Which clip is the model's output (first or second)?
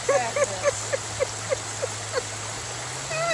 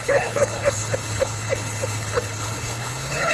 second